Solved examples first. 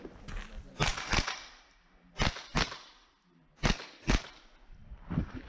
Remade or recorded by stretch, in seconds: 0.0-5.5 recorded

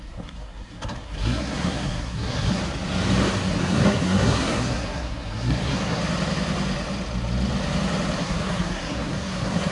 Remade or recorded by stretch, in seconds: 0.0-2.6 remade; 2.6-3.6 recorded; 3.6-6.0 remade; 6.0-8.2 recorded; 8.2-9.7 remade

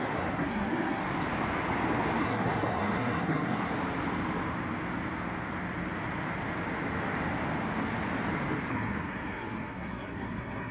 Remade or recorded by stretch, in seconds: 0.0-1.0 remade; 1.0-2.2 recorded; 2.2-3.7 remade; 3.7-8.7 recorded; 8.7-10.7 remade

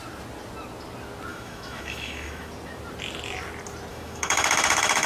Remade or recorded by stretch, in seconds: 0.0-1.3 recorded; 1.3-2.5 remade; 2.5-3.9 recorded; 3.9-5.1 remade

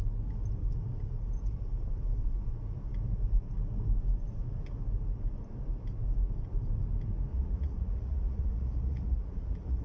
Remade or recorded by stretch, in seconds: 0.0-7.3 recorded; 7.3-9.8 remade